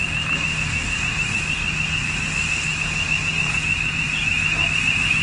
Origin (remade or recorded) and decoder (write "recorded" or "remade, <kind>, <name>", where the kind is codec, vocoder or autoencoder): recorded